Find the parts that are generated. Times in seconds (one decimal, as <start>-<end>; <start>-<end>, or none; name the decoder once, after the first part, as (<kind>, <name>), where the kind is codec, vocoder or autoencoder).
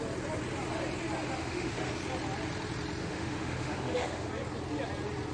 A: 1.4-1.9 (autoencoder, DAC-VAE); 3.0-4.3